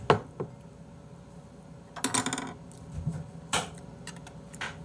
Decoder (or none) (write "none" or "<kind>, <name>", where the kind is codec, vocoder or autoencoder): none